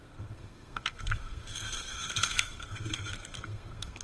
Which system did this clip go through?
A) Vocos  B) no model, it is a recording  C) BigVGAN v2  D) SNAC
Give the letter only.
D